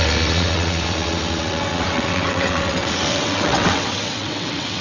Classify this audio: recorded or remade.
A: remade